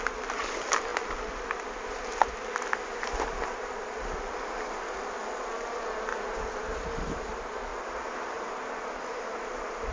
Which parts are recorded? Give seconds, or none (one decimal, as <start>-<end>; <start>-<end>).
0.0-6.1; 7.2-7.7; 8.4-9.9